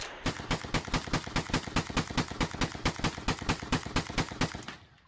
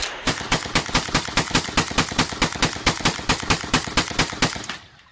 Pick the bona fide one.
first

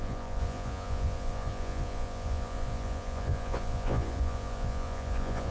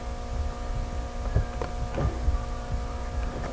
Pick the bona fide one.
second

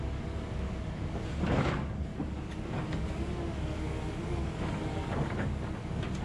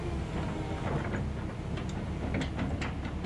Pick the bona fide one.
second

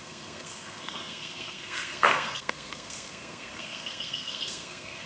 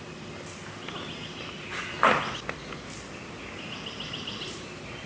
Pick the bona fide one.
second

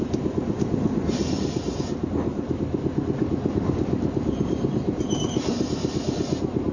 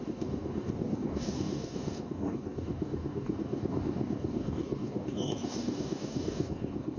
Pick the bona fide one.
first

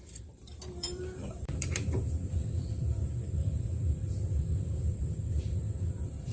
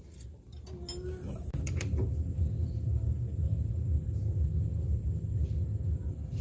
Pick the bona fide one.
second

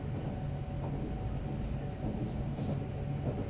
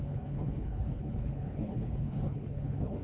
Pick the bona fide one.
first